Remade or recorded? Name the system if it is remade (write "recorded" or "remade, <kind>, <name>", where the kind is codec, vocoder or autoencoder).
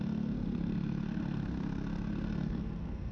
remade, codec, SNAC